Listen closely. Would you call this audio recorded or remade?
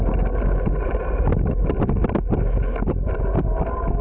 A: recorded